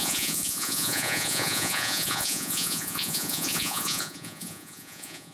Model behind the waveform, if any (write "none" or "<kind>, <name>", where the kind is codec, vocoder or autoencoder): vocoder, Vocos